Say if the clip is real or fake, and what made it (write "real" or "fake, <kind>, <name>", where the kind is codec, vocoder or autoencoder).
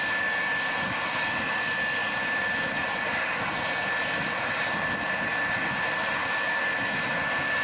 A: real